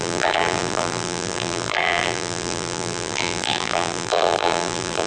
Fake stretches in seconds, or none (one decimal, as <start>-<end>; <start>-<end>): 0.0-5.1